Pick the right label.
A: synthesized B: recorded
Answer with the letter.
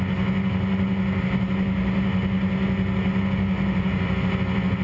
B